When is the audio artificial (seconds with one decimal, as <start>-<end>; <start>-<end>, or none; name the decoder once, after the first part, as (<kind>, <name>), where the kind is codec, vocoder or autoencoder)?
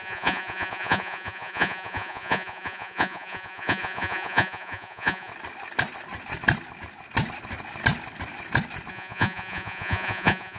0.0-5.3 (vocoder, Vocos); 8.9-10.6